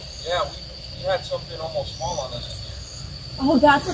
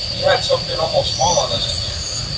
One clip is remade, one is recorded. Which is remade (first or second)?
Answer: second